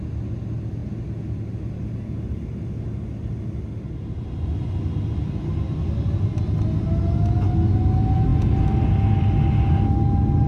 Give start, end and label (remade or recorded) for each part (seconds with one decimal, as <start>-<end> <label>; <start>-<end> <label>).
0.0-10.5 recorded